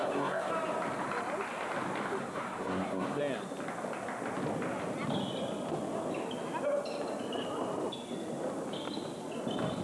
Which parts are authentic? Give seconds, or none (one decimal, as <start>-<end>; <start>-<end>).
0.5-2.2; 3.2-9.8